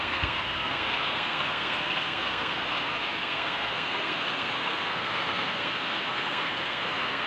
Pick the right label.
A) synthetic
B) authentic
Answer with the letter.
A